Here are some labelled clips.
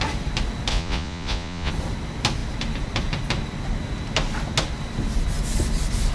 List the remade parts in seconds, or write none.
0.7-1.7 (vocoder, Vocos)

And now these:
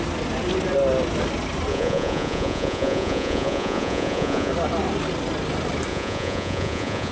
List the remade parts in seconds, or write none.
1.7-4.5 (vocoder, Vocos); 5.9-7.1

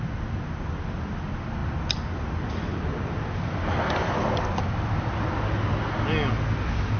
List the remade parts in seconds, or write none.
none